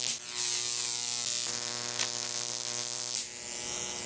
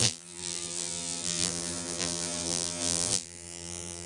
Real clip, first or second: first